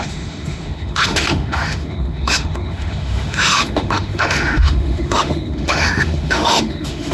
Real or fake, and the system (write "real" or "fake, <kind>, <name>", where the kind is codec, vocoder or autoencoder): fake, autoencoder, DAC-VAE